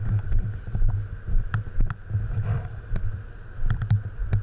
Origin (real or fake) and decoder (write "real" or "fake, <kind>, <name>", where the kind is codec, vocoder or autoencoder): real